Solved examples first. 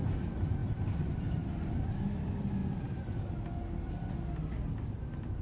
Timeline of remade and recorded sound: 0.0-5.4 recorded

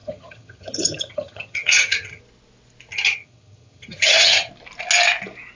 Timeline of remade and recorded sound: 0.0-2.2 remade; 2.2-2.9 recorded; 2.9-4.5 remade; 4.5-5.5 recorded

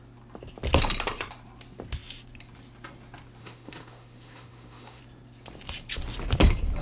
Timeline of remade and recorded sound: 0.0-3.4 recorded; 3.4-5.0 remade; 5.0-6.8 recorded

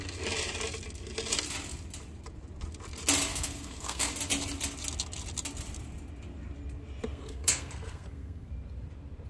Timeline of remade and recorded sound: 0.0-3.3 recorded; 3.3-4.1 remade; 4.1-7.1 recorded; 7.1-8.5 remade; 8.5-9.3 recorded

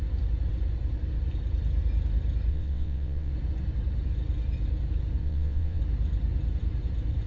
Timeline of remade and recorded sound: 0.0-2.5 recorded; 2.5-3.3 remade; 3.3-5.2 recorded; 5.2-5.8 remade; 5.8-7.3 recorded

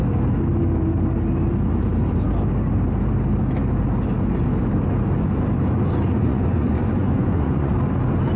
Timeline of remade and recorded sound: 0.0-6.2 recorded; 6.2-7.7 remade; 7.7-8.4 recorded